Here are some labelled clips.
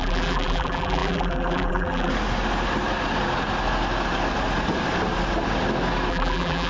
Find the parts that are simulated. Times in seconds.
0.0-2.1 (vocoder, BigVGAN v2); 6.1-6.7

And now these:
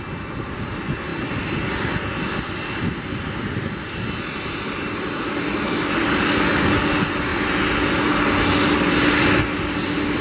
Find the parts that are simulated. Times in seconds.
none

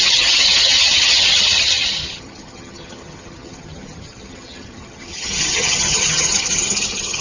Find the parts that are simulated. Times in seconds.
0.0-7.2 (vocoder, HiFi-GAN)

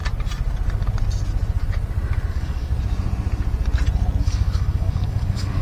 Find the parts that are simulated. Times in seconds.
2.3-2.7 (codec, DAC); 4.2-5.6

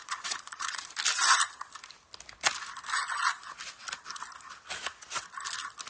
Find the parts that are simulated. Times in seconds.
0.0-0.8 (vocoder, Vocos)

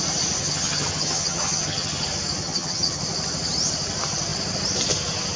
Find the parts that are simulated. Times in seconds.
0.4-2.0 (vocoder, HiFi-GAN); 2.4-3.0